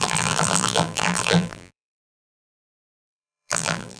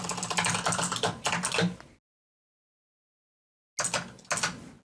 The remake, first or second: first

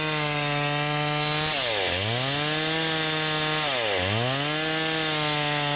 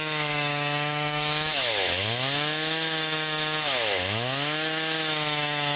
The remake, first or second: second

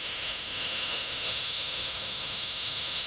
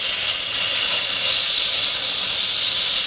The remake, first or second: first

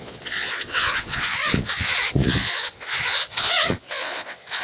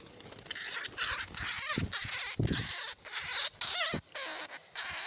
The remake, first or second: first